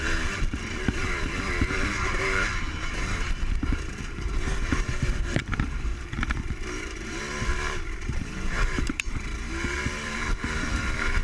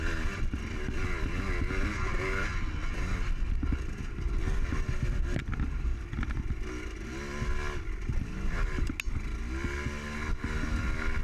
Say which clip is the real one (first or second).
second